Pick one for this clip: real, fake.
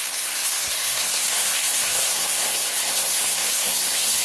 fake